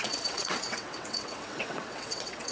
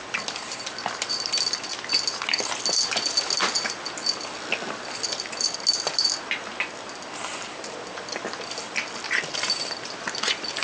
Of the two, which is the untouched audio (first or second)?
second